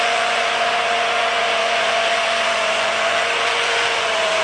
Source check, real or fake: fake